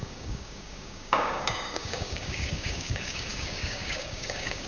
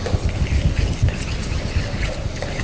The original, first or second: second